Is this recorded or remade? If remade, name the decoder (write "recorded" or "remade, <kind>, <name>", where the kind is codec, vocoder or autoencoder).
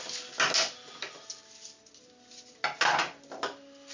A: recorded